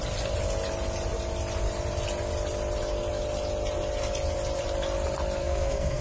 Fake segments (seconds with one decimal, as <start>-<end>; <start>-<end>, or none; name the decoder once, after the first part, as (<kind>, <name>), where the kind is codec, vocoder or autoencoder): 5.4-6.0 (codec, SNAC)